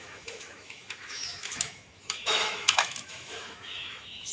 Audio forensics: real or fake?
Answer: fake